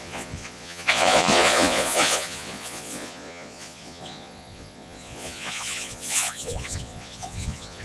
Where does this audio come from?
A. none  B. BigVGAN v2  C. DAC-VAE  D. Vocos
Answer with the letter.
D